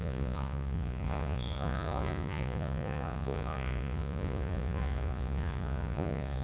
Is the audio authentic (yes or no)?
no